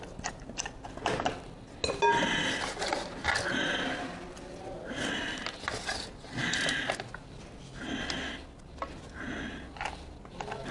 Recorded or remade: recorded